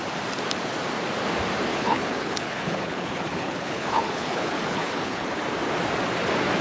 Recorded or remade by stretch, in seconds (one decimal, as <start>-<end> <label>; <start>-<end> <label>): 0.0-1.7 recorded; 1.7-5.4 remade; 5.4-6.6 recorded